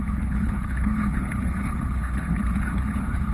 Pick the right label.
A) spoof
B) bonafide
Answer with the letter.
A